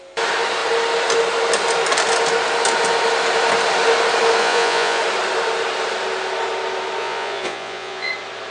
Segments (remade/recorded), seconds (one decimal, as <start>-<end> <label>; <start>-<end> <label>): 0.0-4.4 recorded; 4.4-5.0 remade; 5.0-7.0 recorded; 7.0-8.1 remade; 8.1-8.5 recorded